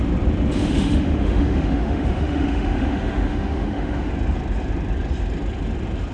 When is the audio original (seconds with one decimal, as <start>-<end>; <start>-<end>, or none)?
0.0-0.6; 4.1-6.1